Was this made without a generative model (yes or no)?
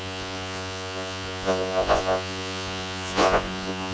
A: no